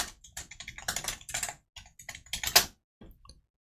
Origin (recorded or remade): recorded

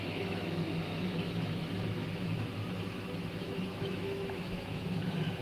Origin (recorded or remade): remade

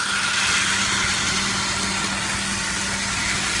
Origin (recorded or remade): recorded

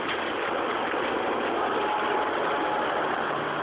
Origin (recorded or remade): recorded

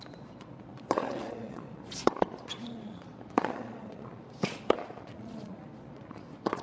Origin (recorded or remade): remade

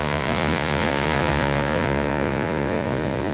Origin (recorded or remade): remade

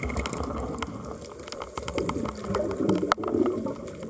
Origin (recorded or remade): recorded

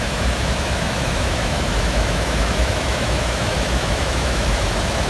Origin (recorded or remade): remade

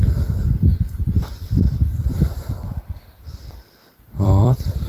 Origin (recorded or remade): remade